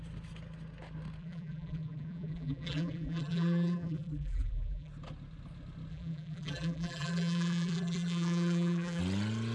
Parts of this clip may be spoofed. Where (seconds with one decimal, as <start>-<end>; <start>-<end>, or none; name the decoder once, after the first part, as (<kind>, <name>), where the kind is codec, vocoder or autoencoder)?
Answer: 1.2-4.9 (vocoder, BigVGAN v2); 5.9-9.0

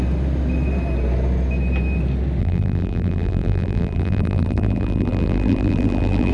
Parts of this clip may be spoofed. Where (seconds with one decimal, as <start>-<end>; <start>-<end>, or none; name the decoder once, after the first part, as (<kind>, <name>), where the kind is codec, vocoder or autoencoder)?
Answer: 2.4-6.3 (vocoder, BigVGAN v2)

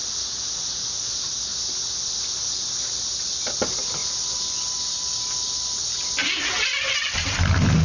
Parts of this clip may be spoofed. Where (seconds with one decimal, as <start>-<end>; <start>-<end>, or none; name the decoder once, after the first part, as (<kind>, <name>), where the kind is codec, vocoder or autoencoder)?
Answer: 0.0-1.5 (vocoder, BigVGAN v2); 3.6-6.2; 6.9-7.8

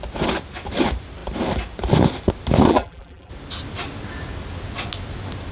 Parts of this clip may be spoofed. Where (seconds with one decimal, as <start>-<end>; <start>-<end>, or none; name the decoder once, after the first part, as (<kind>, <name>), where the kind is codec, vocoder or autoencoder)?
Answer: 2.7-3.3 (vocoder, BigVGAN v2)

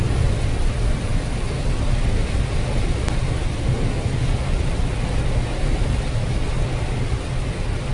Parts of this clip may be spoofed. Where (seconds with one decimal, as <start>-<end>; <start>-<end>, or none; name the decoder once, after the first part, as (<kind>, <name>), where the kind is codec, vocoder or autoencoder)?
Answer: none